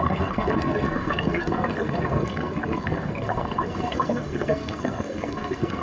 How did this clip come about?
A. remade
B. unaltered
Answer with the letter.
A